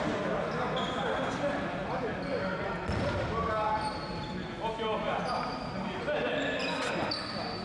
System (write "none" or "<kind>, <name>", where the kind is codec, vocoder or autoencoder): none